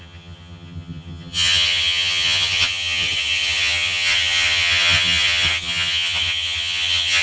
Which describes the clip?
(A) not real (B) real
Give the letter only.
A